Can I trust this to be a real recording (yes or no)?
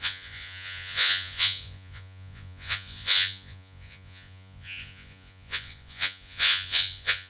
no